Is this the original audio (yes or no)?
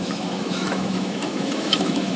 no